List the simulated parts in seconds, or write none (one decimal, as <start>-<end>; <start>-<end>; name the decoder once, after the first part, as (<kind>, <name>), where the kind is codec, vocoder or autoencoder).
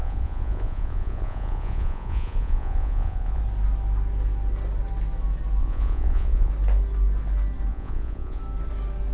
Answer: 0.0-3.4 (vocoder, Vocos); 5.6-6.5; 7.7-8.4